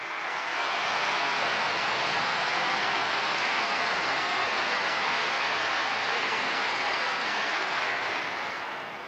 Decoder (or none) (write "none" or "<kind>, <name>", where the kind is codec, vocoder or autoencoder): codec, SNAC